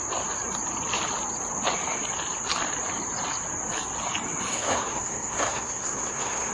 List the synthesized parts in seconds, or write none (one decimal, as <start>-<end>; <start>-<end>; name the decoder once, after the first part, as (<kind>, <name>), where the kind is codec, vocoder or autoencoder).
4.5-6.5 (codec, SNAC)